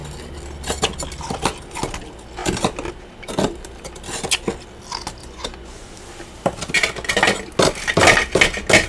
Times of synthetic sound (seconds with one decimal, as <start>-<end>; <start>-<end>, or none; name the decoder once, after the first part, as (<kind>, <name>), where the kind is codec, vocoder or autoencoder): 5.2-5.9 (vocoder, Vocos)